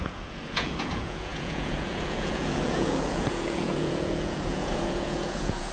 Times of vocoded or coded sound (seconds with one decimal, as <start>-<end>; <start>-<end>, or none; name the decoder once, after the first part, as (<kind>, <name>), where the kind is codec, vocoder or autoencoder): 0.0-5.7 (vocoder, Vocos)

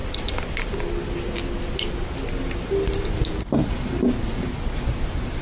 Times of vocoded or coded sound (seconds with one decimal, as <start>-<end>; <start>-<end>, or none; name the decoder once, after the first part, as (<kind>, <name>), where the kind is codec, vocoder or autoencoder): none